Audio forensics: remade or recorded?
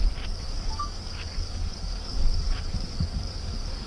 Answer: remade